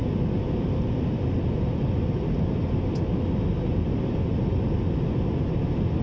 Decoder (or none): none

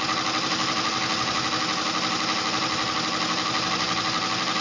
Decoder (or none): none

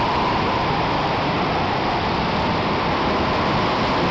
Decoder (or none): none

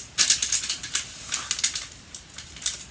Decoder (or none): none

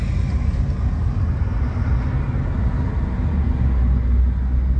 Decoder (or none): none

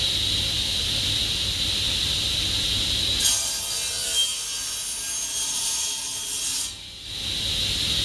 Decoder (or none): none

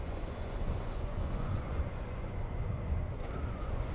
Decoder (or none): vocoder, Vocos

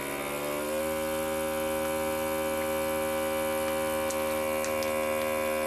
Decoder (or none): none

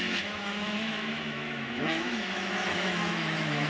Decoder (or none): autoencoder, DAC-VAE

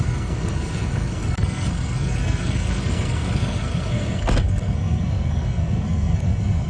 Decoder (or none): codec, SNAC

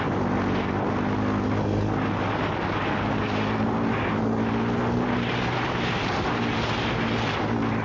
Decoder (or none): none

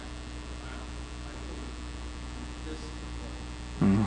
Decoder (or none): none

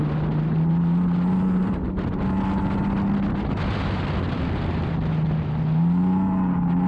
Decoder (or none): none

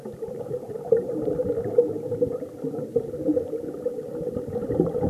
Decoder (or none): none